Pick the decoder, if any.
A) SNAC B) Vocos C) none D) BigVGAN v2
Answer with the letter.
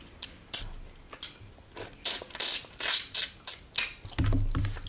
C